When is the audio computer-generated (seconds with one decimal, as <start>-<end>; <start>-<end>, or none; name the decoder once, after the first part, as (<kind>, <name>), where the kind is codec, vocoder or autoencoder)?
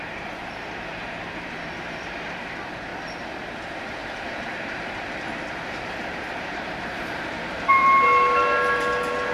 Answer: 0.0-2.9 (vocoder, BigVGAN v2); 3.6-9.3